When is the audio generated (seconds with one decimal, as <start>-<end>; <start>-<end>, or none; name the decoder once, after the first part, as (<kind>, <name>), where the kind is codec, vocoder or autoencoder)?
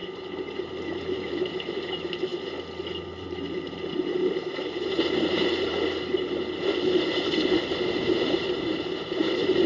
0.0-2.3 (vocoder, BigVGAN v2); 3.0-5.7; 7.0-9.7